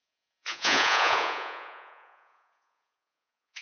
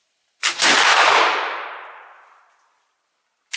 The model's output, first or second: first